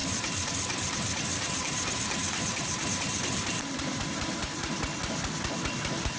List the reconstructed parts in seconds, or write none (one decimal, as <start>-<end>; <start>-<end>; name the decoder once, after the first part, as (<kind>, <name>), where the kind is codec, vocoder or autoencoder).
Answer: 1.3-4.8 (vocoder, BigVGAN v2)